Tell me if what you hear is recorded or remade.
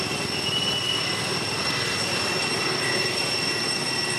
recorded